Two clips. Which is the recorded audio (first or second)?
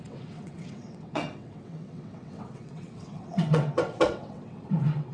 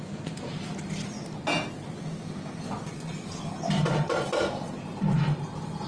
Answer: second